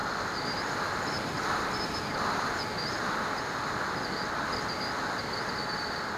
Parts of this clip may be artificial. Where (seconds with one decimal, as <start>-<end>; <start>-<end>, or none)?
none